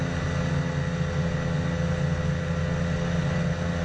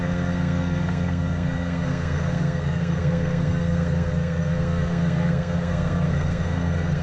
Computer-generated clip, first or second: second